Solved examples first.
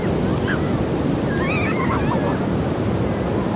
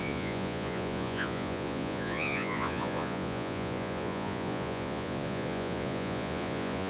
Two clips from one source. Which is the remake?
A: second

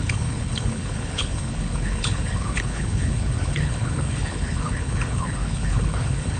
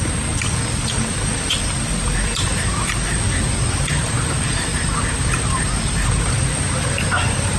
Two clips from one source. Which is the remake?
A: first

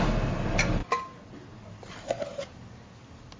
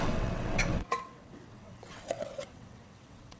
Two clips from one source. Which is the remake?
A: second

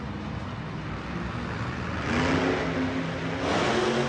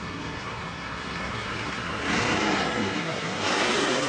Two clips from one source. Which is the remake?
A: second